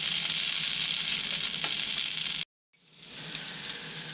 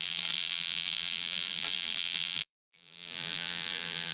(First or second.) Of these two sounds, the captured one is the first